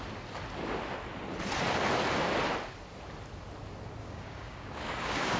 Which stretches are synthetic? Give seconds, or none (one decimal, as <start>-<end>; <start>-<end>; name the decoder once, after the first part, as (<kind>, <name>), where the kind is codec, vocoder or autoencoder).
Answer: 4.0-5.4 (codec, DAC)